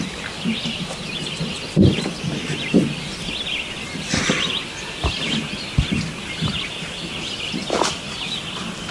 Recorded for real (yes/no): yes